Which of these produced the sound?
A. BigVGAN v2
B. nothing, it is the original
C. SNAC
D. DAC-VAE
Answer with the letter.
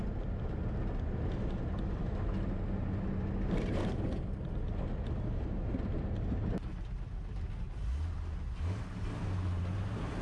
B